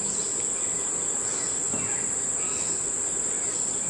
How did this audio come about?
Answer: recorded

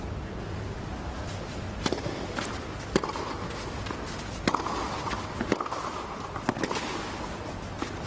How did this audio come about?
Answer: recorded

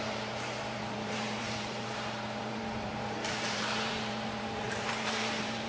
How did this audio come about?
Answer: remade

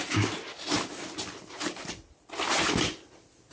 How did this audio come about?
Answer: remade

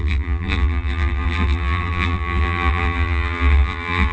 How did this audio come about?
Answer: remade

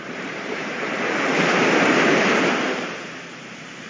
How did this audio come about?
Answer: remade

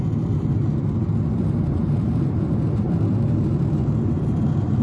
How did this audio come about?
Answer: remade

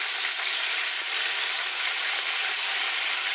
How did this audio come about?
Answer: remade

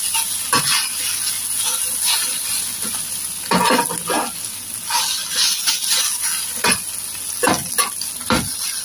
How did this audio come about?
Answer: recorded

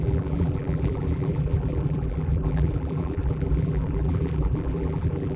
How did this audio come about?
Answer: remade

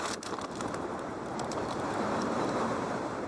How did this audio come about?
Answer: remade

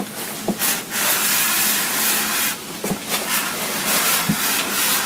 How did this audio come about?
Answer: recorded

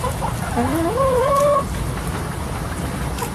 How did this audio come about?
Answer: recorded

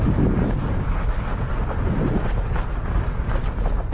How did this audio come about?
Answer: recorded